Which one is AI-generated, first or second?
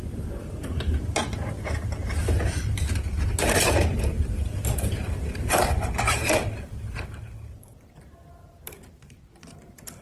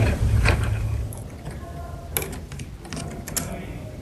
first